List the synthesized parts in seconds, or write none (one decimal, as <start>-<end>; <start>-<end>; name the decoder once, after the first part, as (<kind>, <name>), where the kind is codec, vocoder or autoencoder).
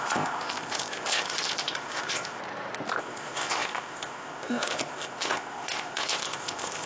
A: 0.0-2.4 (codec, ZipCodec); 3.0-6.9